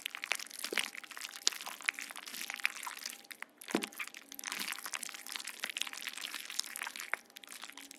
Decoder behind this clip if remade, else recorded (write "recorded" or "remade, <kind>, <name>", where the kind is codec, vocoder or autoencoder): recorded